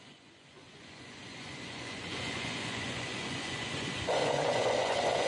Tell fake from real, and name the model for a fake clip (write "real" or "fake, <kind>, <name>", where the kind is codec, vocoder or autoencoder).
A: fake, vocoder, Vocos